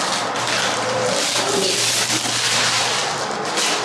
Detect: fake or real real